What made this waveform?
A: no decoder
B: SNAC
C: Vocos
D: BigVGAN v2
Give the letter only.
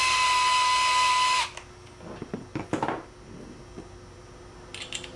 A